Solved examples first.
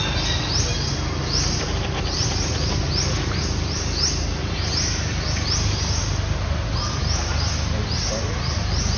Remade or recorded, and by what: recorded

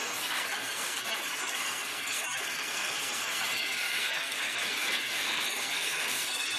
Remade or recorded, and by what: remade, codec, SNAC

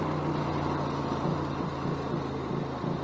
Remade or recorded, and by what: recorded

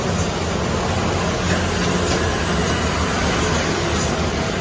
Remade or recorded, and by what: recorded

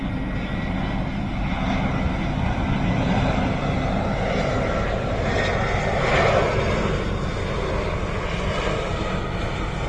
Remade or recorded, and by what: recorded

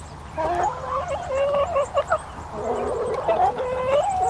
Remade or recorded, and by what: recorded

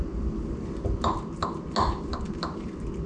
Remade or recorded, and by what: recorded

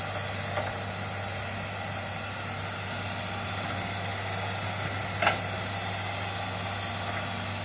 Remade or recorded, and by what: recorded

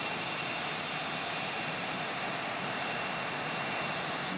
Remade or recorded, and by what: recorded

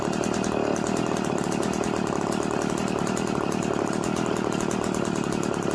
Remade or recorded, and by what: recorded